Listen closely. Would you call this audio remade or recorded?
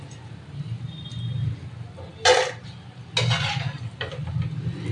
recorded